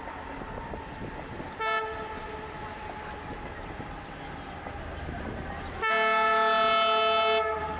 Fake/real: real